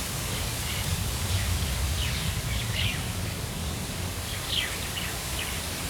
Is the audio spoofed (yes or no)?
yes